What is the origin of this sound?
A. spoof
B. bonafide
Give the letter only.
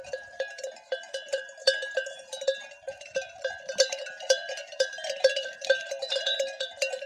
A